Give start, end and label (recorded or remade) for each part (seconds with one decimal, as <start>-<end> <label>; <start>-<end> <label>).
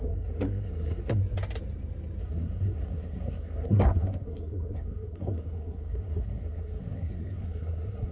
0.0-1.2 remade; 1.2-2.2 recorded; 2.2-8.1 remade